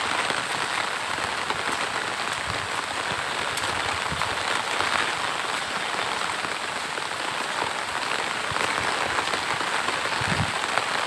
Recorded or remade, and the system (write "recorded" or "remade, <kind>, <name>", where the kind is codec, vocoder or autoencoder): recorded